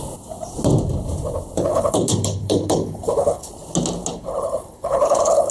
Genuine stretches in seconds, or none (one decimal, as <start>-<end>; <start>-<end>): 0.0-1.7; 3.5-4.1